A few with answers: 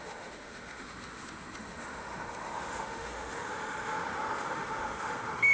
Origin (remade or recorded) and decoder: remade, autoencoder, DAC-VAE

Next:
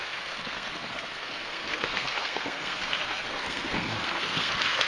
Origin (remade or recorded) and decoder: remade, codec, SNAC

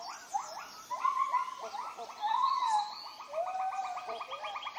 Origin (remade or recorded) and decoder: recorded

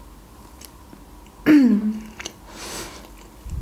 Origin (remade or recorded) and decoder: recorded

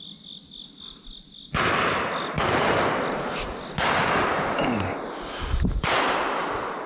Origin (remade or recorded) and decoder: recorded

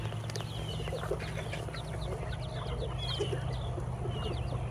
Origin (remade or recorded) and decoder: recorded